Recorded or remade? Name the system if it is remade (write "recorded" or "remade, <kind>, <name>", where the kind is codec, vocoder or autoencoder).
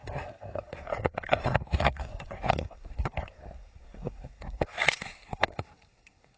remade, codec, SNAC